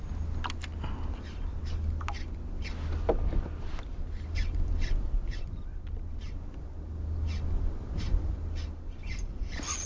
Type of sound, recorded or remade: recorded